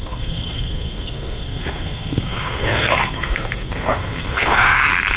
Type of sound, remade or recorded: remade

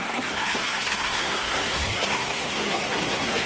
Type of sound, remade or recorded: remade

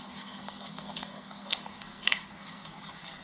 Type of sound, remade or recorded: remade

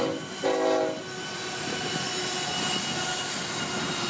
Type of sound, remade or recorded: recorded